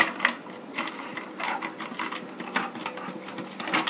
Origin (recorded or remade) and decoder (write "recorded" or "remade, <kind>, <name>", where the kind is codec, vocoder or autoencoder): recorded